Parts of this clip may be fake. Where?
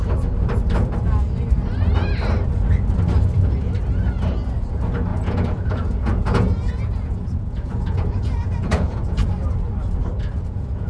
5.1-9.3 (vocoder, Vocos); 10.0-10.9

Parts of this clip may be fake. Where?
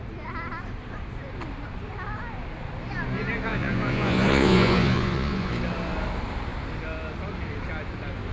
3.5-5.5 (vocoder, Vocos)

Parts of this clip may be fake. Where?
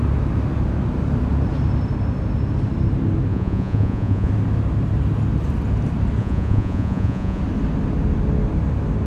3.3-4.3 (vocoder, Vocos); 6.2-7.4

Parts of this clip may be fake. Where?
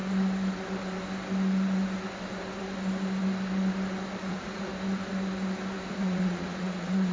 4.3-4.7 (vocoder, Vocos); 5.9-7.1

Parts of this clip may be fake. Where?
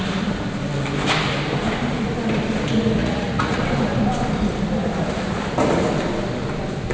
3.0-3.6 (vocoder, Vocos)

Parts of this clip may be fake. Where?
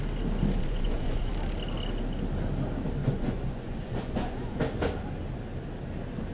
0.6-1.3 (vocoder, Vocos); 3.0-4.6